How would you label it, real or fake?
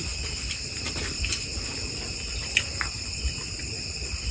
fake